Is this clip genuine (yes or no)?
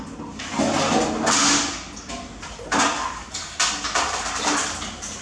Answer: yes